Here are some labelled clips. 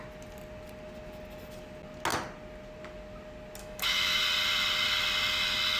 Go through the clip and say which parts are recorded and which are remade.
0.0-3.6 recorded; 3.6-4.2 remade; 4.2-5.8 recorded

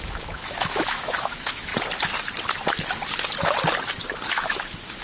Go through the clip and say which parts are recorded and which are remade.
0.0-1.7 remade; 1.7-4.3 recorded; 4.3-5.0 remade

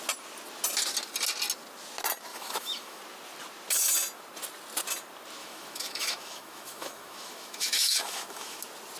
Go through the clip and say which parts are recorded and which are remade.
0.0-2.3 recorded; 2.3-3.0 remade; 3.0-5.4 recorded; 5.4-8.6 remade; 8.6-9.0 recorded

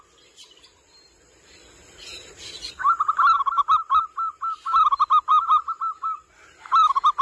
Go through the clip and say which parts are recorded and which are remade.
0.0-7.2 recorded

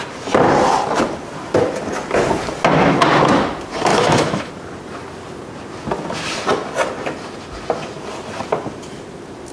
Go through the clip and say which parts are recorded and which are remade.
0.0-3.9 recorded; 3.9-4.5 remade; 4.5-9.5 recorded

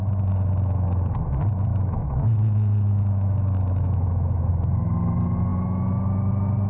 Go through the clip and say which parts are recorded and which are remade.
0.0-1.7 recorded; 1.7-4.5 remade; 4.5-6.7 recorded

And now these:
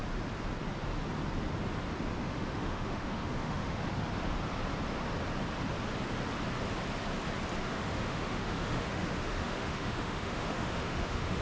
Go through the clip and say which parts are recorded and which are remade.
0.0-2.2 recorded; 2.2-3.8 remade; 3.8-7.6 recorded; 7.6-11.4 remade